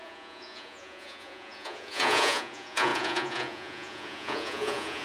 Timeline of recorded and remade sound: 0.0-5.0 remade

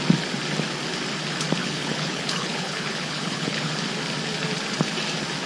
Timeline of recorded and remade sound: 0.0-1.6 recorded; 1.6-3.7 remade; 3.7-5.5 recorded

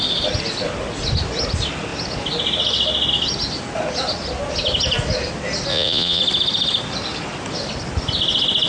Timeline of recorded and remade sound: 0.0-5.7 recorded; 5.7-6.2 remade; 6.2-8.7 recorded